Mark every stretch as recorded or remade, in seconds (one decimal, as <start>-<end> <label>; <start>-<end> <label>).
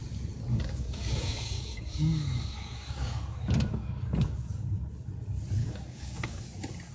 0.0-0.5 recorded; 0.5-4.5 remade; 4.5-5.6 recorded; 5.6-6.4 remade; 6.4-6.9 recorded